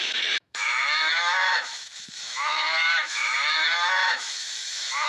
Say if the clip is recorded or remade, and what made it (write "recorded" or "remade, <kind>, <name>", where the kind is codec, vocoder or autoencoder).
remade, autoencoder, DAC-VAE